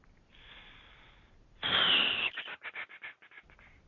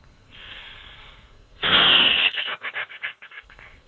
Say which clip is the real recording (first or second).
first